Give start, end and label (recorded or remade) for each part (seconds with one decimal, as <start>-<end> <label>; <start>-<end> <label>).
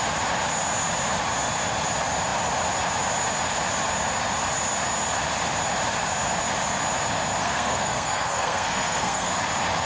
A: 0.0-7.4 recorded; 7.4-9.3 remade; 9.3-9.9 recorded